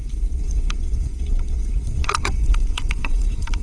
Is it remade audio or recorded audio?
remade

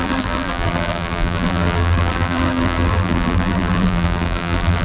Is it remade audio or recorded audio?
remade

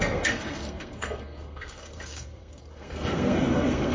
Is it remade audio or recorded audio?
remade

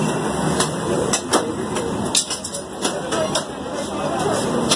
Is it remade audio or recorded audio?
recorded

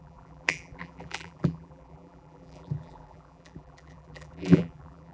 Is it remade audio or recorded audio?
remade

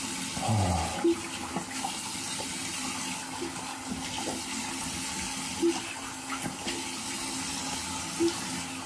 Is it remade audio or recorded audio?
recorded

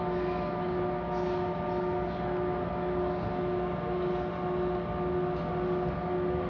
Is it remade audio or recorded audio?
recorded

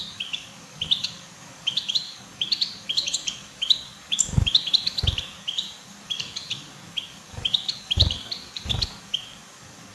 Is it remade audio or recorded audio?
remade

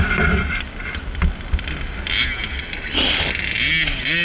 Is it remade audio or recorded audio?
recorded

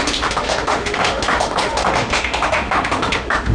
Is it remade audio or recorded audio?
remade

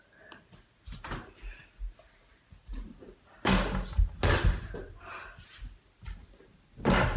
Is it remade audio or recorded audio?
recorded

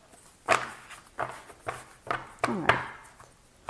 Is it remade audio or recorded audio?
recorded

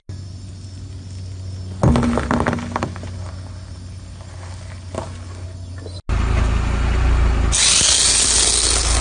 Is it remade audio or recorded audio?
recorded